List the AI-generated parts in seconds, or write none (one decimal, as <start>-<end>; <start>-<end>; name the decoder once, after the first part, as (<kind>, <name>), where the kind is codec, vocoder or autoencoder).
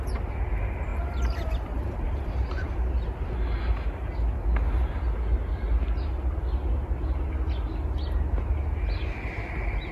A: 0.9-2.9 (vocoder, BigVGAN v2)